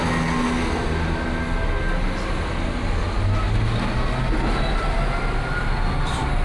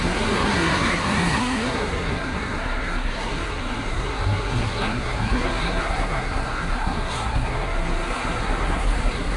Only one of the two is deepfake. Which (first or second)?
second